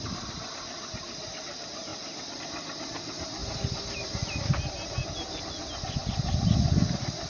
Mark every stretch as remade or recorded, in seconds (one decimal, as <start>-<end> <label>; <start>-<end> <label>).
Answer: 0.0-1.9 recorded; 1.9-2.4 remade; 2.4-3.4 recorded; 3.4-4.5 remade; 4.5-7.3 recorded